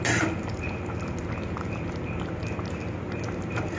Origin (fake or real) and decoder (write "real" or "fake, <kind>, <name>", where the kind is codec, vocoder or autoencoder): real